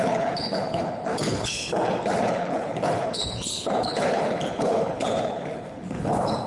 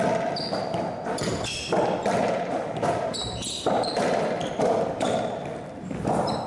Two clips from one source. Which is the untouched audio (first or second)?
second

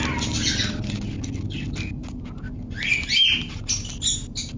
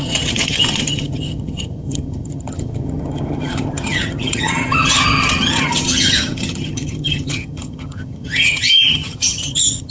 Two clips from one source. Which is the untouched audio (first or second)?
first